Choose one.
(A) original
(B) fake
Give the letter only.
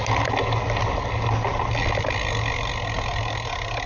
A